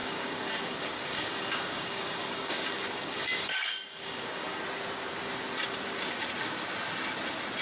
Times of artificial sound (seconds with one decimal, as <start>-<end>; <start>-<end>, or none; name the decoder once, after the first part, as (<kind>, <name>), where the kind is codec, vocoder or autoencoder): 0.0-4.6 (codec, DAC)